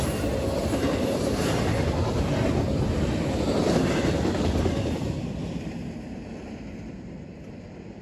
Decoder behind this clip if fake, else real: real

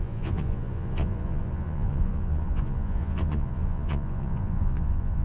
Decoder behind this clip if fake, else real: fake, vocoder, Vocos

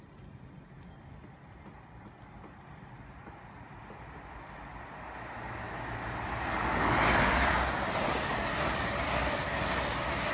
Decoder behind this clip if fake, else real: real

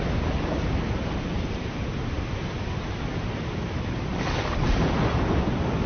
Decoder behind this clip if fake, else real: real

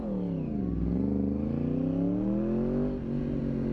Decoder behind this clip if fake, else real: real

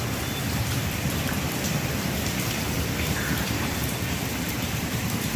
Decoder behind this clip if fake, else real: fake, vocoder, BigVGAN v2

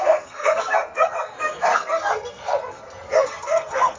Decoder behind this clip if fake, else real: fake, codec, SNAC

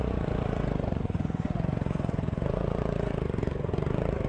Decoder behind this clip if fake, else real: fake, vocoder, Vocos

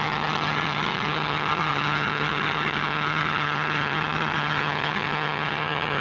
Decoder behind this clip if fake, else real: fake, vocoder, HiFi-GAN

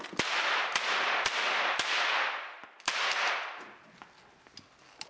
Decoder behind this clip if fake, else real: real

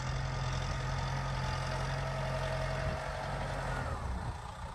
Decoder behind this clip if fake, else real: real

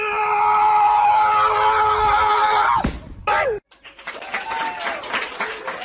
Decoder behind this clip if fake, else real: real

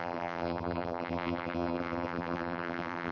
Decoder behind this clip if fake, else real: fake, vocoder, BigVGAN v2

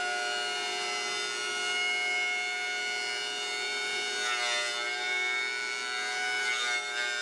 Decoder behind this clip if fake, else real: real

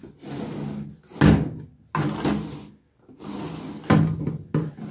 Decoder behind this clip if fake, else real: real